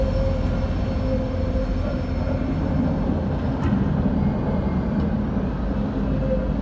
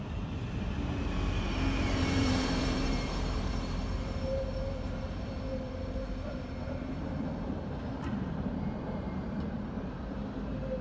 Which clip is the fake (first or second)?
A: second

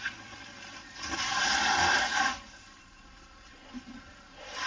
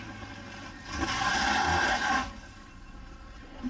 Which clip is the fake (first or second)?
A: first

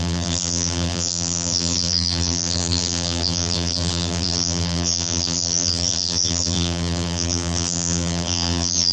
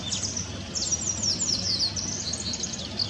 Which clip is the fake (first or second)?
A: first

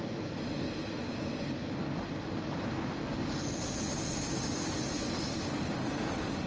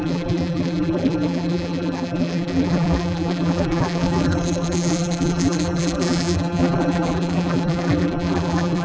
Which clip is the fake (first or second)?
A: second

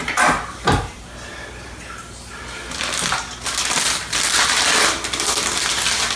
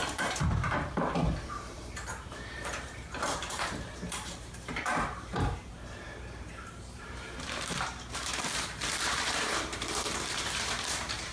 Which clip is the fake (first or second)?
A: second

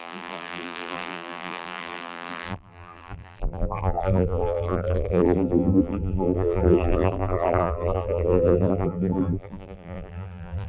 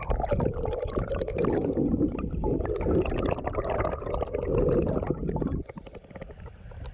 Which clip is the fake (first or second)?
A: first